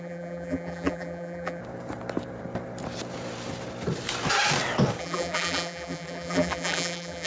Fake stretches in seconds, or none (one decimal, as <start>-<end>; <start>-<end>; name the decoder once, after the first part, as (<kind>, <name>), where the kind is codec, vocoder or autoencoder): 0.0-1.6 (vocoder, BigVGAN v2); 5.0-7.3